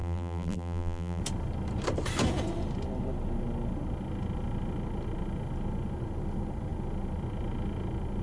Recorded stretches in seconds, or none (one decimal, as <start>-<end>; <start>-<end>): 1.2-8.2